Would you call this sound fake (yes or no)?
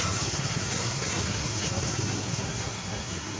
yes